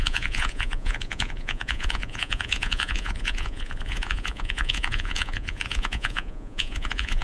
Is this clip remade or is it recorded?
remade